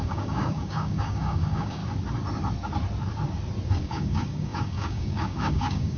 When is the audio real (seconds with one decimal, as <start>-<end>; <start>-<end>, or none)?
1.8-3.8